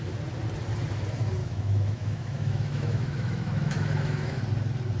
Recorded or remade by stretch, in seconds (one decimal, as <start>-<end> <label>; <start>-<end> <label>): 0.0-1.4 recorded; 1.4-4.4 remade; 4.4-5.0 recorded

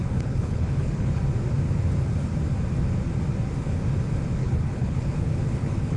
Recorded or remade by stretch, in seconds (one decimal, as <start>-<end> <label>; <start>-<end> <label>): 0.0-1.2 remade; 1.2-4.4 recorded; 4.4-6.0 remade

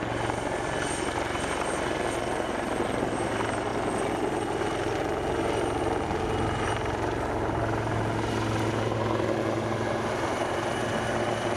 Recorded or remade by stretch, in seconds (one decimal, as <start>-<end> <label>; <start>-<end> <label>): 0.0-11.6 recorded

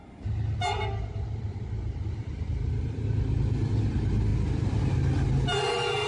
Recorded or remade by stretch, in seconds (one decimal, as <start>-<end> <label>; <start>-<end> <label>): 0.0-6.1 recorded

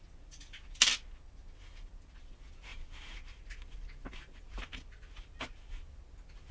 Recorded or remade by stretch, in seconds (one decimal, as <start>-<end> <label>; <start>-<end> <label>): 0.0-6.5 recorded